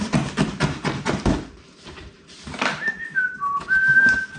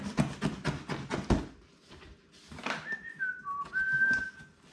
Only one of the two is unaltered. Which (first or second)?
second